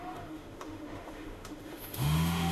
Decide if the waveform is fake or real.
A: fake